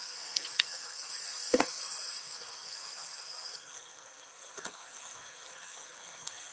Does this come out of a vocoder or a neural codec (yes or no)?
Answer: yes